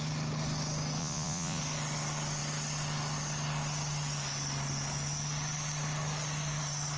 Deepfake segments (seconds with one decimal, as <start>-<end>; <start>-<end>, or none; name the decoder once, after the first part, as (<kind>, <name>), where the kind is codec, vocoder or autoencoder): 1.0-1.6 (vocoder, Vocos)